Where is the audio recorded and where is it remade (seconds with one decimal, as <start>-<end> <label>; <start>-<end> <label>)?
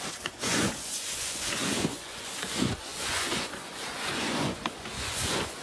0.0-5.6 remade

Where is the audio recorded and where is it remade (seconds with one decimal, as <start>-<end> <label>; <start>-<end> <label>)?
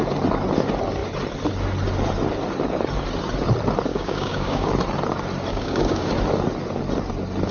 0.0-3.9 recorded; 3.9-4.7 remade; 4.7-5.5 recorded; 5.5-6.1 remade; 6.1-7.5 recorded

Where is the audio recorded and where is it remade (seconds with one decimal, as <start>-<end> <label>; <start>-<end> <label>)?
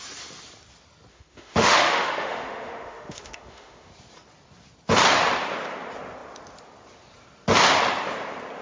0.0-1.1 recorded; 1.1-3.9 remade; 3.9-8.6 recorded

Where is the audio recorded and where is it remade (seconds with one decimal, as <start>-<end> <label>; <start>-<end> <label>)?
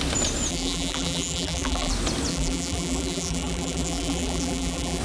0.0-0.5 recorded; 0.5-1.9 remade; 1.9-2.3 recorded; 2.3-5.0 remade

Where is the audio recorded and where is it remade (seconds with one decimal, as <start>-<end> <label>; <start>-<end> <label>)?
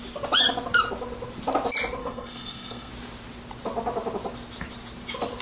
0.0-2.0 recorded; 2.0-2.9 remade; 2.9-5.4 recorded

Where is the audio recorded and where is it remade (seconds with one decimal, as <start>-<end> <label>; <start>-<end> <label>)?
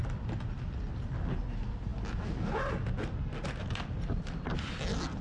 0.0-5.2 recorded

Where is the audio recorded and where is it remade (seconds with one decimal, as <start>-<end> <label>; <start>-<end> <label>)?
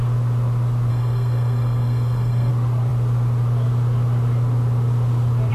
0.0-0.9 recorded; 0.9-2.5 remade; 2.5-5.5 recorded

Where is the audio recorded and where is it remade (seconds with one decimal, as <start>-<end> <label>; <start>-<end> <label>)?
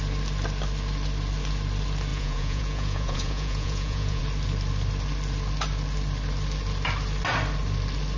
0.0-2.1 recorded; 2.1-4.2 remade; 4.2-8.2 recorded